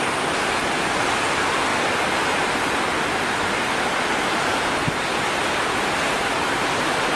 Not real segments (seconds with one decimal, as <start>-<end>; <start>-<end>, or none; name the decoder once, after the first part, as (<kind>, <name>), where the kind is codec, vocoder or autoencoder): 1.7-2.7 (vocoder, BigVGAN v2)